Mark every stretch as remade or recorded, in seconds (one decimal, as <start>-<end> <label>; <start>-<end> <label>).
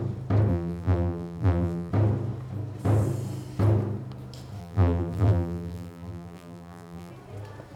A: 0.0-0.5 recorded; 0.5-1.9 remade; 1.9-4.6 recorded; 4.6-7.1 remade; 7.1-7.8 recorded